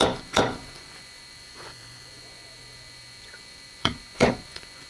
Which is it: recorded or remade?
remade